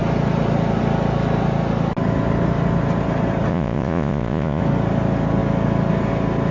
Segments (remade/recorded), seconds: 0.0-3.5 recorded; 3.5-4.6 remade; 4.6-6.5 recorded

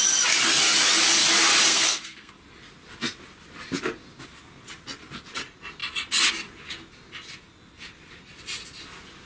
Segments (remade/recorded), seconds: 0.0-1.7 recorded; 1.7-2.3 remade; 2.3-9.3 recorded